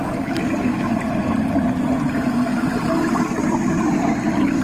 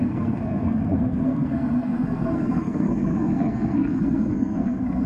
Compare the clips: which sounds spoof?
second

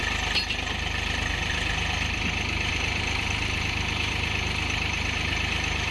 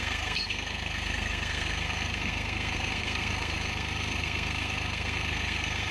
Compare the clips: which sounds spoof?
second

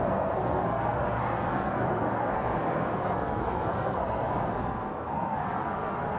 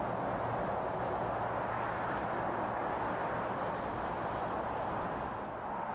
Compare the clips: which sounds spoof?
first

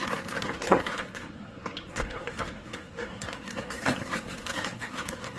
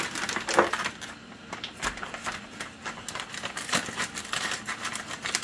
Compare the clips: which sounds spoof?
first